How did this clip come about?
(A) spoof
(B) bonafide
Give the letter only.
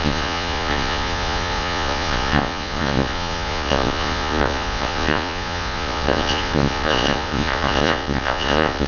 A